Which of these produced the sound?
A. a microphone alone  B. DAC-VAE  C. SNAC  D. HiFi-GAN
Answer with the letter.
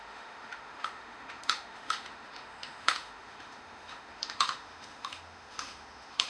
B